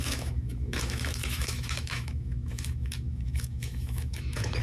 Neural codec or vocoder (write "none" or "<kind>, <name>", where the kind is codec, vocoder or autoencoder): autoencoder, DAC-VAE